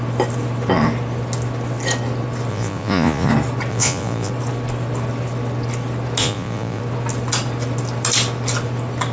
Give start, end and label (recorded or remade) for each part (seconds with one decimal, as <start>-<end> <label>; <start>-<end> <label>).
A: 0.0-2.5 recorded; 2.5-3.3 remade; 3.3-3.7 recorded; 3.7-4.3 remade; 4.3-6.2 recorded; 6.2-6.8 remade; 6.8-9.1 recorded